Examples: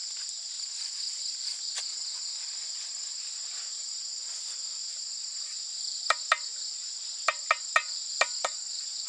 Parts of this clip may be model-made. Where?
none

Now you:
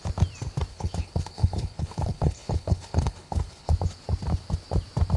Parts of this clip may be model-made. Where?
0.7-3.7 (codec, HILCodec)